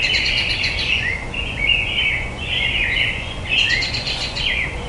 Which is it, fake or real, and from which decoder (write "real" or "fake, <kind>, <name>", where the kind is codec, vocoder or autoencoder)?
fake, vocoder, Vocos